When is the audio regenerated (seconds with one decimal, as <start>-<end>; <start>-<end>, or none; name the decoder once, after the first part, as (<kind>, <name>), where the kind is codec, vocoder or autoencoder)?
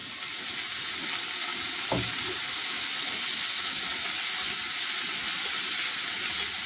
1.5-2.8 (vocoder, BigVGAN v2)